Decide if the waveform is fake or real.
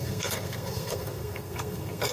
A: fake